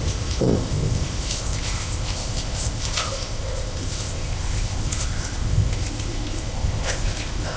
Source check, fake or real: fake